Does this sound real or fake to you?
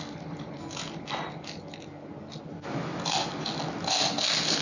real